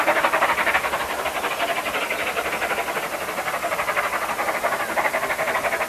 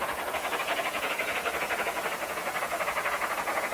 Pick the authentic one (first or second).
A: first